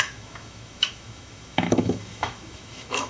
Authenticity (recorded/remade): remade